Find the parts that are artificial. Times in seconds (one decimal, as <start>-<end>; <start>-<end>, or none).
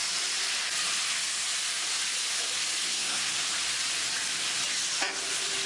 2.8-3.3